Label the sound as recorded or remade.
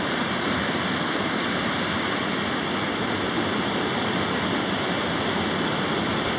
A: recorded